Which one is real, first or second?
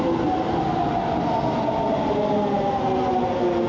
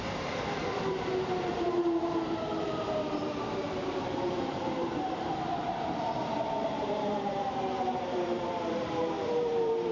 first